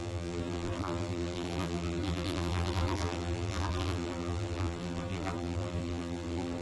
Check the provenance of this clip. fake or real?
fake